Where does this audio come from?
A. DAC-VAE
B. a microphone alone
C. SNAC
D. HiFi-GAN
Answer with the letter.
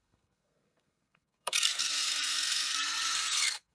C